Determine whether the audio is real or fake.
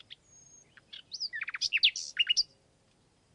real